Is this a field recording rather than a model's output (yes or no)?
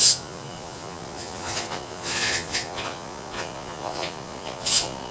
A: no